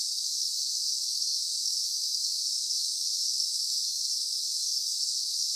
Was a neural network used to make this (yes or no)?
yes